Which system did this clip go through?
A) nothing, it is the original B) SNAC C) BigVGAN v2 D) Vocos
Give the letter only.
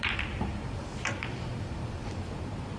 C